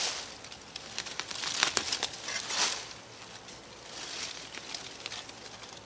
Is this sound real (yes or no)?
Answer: yes